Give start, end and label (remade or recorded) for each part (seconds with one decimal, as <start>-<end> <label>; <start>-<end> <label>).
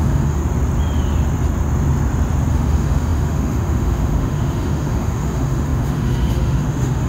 0.0-0.4 remade; 0.4-2.5 recorded; 2.5-7.1 remade